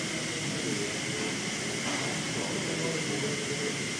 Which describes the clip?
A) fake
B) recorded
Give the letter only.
B